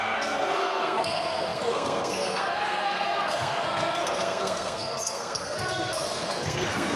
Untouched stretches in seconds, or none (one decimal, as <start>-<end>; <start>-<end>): none